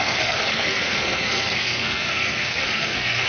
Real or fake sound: fake